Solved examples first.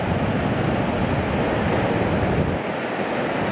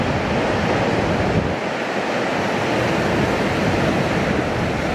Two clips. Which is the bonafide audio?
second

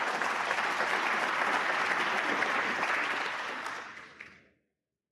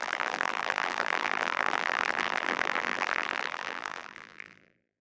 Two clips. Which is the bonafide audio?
first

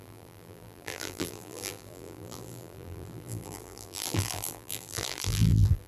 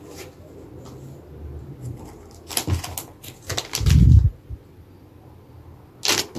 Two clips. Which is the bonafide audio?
second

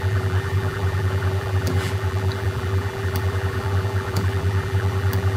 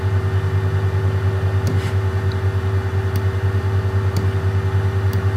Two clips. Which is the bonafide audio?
second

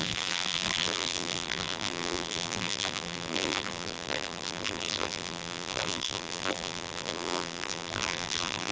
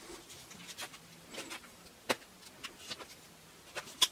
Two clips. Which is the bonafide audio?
second